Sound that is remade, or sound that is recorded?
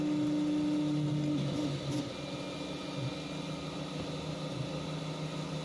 recorded